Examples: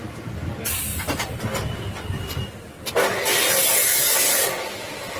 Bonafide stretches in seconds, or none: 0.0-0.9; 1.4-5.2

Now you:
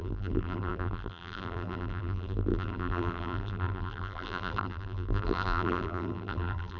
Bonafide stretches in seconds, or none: none

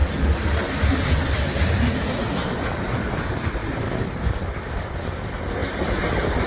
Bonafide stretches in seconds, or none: 0.0-3.6; 4.8-6.5

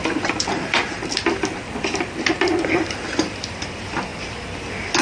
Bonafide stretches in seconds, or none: 4.1-5.0

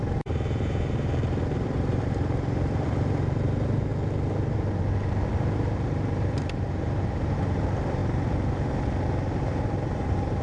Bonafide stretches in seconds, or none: 3.9-5.4; 8.0-9.4

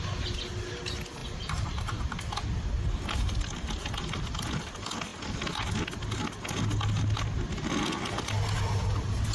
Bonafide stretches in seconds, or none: 0.0-1.2; 2.2-9.3

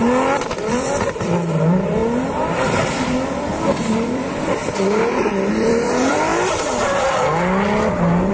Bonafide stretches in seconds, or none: 0.0-0.6; 2.0-3.4; 4.6-5.5; 6.3-8.3